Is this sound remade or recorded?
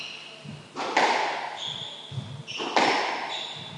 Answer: recorded